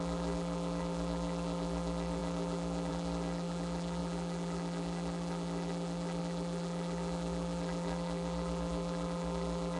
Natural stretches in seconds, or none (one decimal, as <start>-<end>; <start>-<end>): none